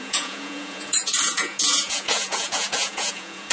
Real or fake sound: fake